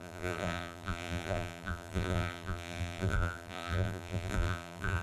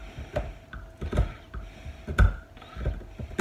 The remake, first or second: first